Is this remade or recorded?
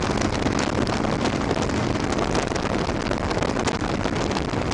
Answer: recorded